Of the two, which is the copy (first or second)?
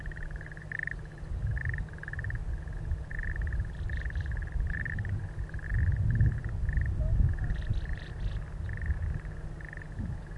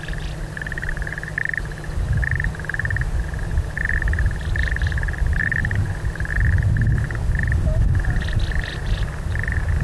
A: second